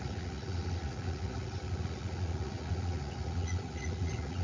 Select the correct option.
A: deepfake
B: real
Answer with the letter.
A